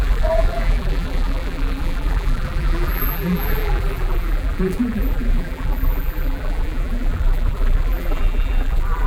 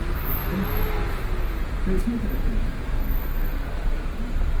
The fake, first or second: first